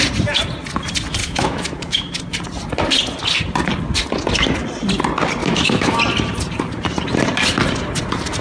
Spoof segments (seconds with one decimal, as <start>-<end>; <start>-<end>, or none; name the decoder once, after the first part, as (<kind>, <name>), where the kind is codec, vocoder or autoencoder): 1.2-2.2 (autoencoder, DAC-VAE); 5.4-6.0